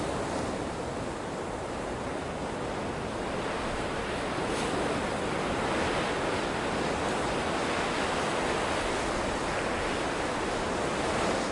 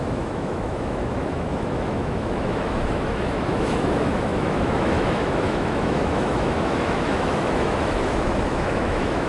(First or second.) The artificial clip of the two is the second